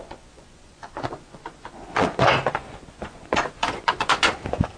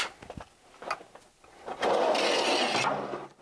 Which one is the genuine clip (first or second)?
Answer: second